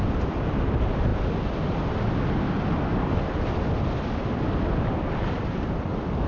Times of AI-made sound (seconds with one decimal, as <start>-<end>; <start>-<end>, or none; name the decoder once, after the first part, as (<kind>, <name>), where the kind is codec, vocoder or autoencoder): 0.0-1.1 (vocoder, BigVGAN v2); 4.9-6.3